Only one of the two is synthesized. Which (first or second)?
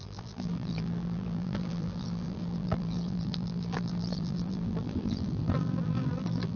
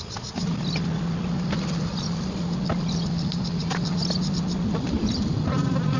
first